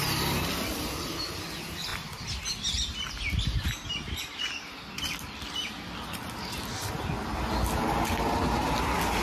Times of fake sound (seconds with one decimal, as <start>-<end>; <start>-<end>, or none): none